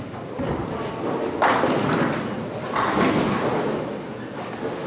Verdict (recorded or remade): recorded